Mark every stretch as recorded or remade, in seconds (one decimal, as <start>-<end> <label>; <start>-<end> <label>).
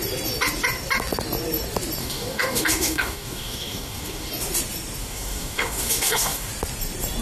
0.0-2.0 recorded; 2.0-4.3 remade; 4.3-5.0 recorded; 5.0-6.5 remade; 6.5-7.2 recorded